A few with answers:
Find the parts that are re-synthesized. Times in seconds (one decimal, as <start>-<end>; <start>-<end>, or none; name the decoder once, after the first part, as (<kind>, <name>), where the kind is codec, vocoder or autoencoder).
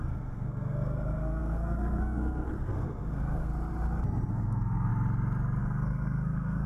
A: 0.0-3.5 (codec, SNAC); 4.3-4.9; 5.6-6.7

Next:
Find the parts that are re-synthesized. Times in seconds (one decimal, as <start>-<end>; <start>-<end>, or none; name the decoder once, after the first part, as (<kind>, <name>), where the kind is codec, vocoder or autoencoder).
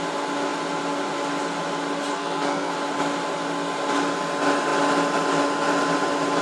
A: 2.1-2.7 (codec, SNAC)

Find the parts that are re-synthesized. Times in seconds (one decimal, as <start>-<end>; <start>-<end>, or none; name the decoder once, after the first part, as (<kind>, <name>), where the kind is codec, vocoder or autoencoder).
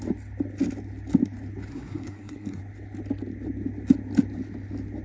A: 1.7-2.6 (codec, SNAC)